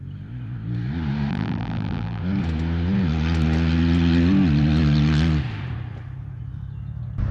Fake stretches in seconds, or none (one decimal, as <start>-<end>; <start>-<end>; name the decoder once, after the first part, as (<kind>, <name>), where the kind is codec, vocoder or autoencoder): 1.3-2.2 (vocoder, BigVGAN v2)